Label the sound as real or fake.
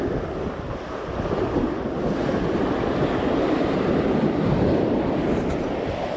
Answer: real